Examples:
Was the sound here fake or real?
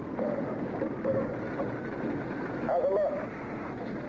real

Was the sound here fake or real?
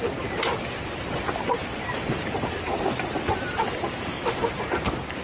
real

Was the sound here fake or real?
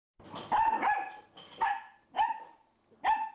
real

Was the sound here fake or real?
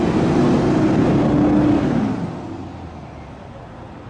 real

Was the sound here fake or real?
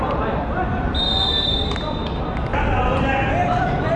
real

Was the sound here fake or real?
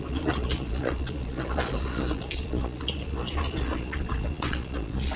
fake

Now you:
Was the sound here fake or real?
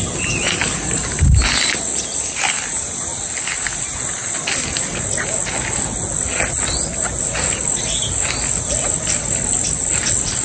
real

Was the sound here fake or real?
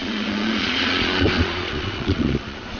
fake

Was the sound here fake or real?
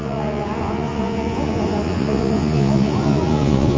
fake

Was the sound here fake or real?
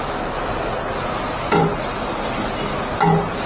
real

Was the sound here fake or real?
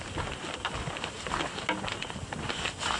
real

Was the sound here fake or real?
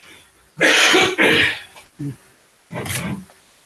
real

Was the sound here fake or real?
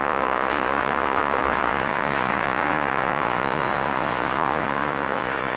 fake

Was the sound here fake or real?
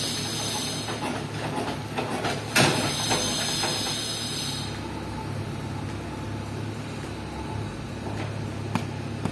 real